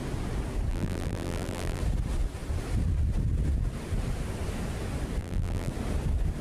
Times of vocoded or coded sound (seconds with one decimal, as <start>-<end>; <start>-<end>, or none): 0.7-1.8; 5.2-5.7